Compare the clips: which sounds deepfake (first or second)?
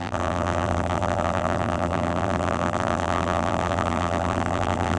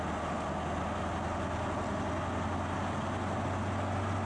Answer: first